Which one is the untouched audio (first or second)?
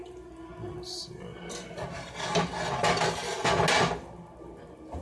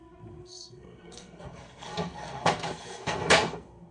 first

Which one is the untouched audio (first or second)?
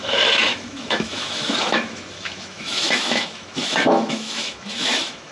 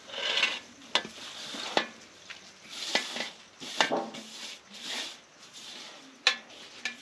second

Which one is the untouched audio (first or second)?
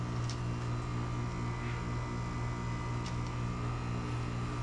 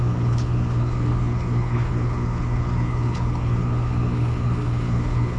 first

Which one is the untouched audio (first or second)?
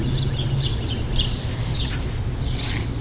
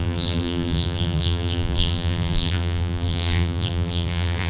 first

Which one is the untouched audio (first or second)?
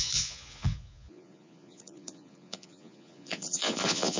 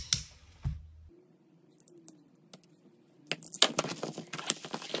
second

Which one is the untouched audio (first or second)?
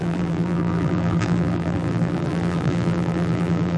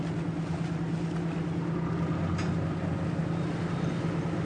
second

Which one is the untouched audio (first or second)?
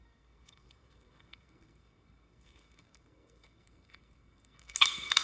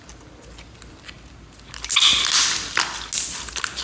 second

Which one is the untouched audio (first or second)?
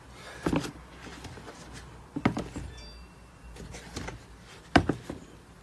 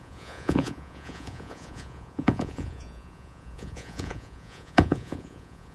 first